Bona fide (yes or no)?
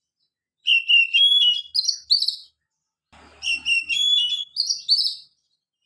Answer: yes